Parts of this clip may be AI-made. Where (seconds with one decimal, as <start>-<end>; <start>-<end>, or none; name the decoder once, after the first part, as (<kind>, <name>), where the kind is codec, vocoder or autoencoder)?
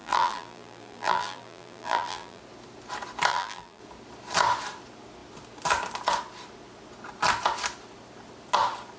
0.0-2.4 (vocoder, BigVGAN v2); 3.3-3.8